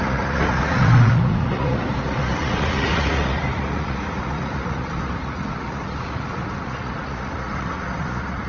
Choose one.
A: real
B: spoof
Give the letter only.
B